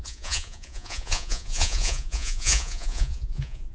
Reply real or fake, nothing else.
fake